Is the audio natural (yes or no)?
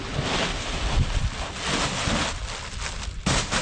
yes